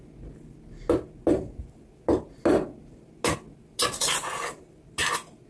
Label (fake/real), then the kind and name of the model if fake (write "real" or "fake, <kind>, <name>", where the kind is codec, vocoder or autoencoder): real